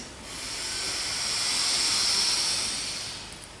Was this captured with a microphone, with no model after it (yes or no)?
yes